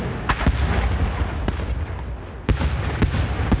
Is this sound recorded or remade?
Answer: recorded